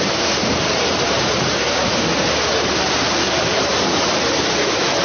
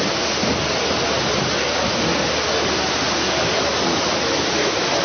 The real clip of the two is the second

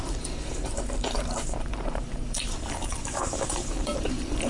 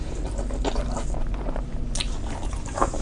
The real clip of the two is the second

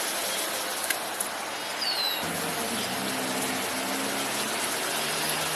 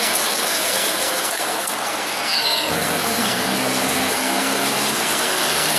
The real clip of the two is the first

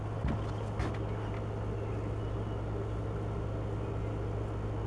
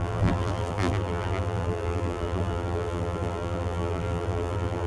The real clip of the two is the first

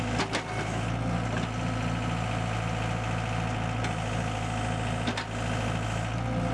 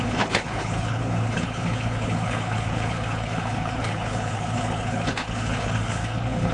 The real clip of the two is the first